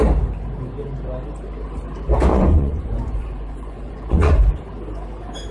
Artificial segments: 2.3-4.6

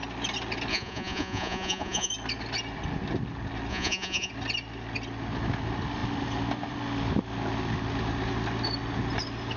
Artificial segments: 0.7-2.1; 3.7-4.3